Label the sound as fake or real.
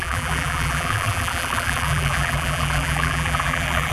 fake